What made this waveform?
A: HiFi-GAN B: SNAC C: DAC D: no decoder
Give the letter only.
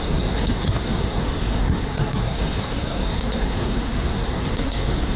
B